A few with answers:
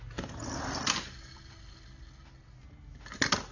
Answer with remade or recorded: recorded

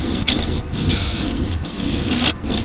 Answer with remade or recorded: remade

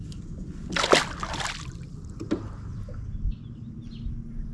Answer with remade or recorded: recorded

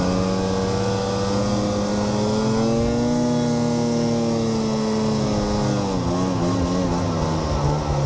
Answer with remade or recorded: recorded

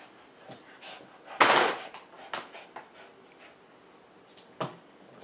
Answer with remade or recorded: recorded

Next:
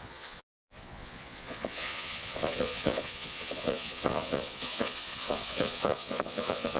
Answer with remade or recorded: remade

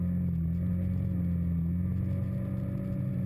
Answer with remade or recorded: recorded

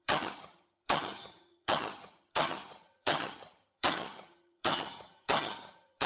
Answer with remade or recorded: remade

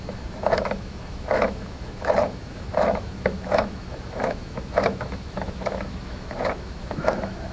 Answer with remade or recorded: remade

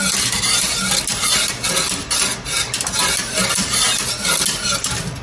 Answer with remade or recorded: recorded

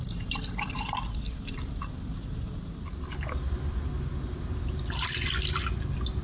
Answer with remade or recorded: recorded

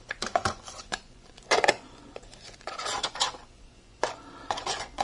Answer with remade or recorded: remade